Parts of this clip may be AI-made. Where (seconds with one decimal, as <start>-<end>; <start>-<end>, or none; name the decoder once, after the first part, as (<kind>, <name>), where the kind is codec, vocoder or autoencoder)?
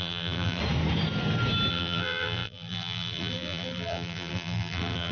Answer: 0.0-0.6 (vocoder, BigVGAN v2); 1.7-5.1